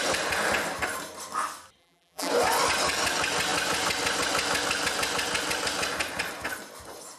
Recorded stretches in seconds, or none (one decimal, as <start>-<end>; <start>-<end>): 0.0-1.8; 2.3-7.2